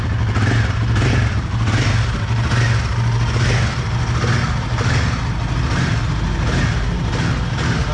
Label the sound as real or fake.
real